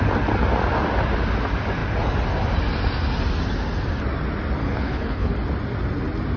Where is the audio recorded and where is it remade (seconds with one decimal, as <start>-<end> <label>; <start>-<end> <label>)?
0.0-4.6 recorded; 4.6-5.3 remade; 5.3-6.4 recorded